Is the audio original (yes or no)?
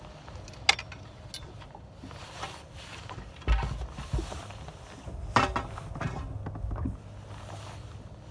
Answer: yes